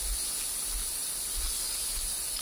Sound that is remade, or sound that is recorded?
recorded